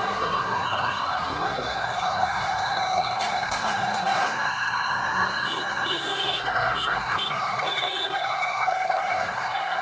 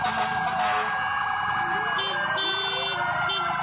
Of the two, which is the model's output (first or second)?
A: first